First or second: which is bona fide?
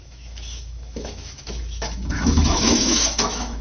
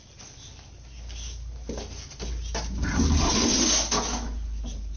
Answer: second